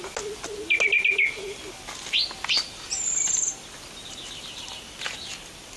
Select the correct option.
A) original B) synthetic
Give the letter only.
A